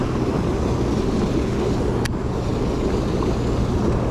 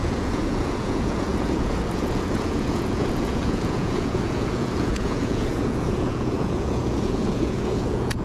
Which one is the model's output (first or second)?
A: second